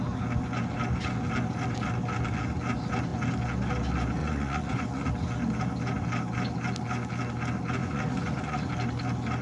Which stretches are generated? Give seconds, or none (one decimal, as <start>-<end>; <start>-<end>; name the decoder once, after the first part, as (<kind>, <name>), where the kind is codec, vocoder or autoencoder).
4.2-5.1 (vocoder, Vocos); 7.8-8.7